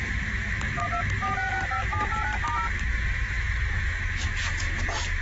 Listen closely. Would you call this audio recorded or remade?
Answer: remade